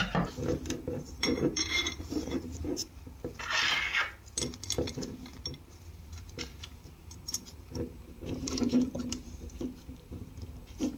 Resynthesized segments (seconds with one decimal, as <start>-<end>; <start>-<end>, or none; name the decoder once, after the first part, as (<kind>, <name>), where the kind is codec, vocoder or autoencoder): 0.0-2.8 (vocoder, BigVGAN v2); 6.0-11.0